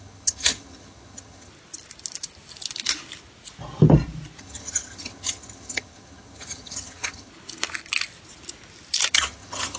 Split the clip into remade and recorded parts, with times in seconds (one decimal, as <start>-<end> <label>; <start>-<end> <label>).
0.0-1.5 remade; 1.5-4.4 recorded; 4.4-7.3 remade; 7.3-9.1 recorded; 9.1-9.8 remade